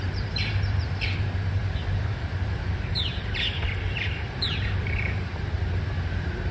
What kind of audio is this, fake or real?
fake